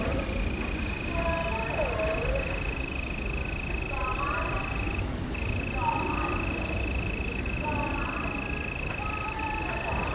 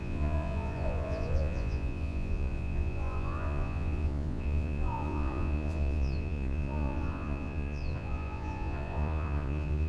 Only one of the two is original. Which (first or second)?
first